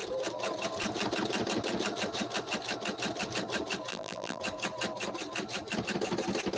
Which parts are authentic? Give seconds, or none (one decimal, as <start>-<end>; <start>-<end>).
0.0-3.9; 4.4-6.6